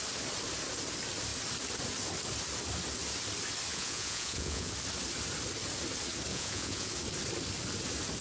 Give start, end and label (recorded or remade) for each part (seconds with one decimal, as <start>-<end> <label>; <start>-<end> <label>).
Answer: 0.0-3.7 recorded; 3.7-4.7 remade; 4.7-6.3 recorded; 6.3-6.9 remade; 6.9-8.2 recorded